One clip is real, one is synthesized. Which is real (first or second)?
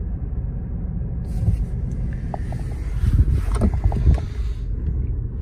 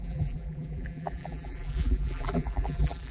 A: first